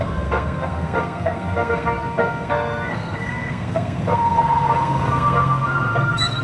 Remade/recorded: remade